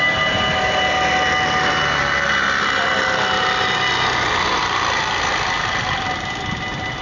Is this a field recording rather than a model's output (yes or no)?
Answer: yes